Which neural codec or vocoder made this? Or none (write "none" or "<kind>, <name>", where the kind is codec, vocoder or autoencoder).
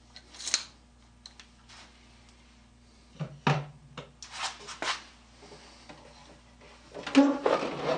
none